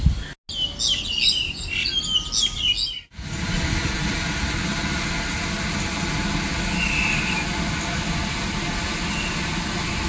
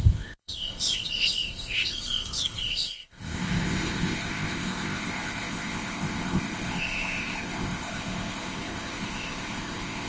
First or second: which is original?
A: first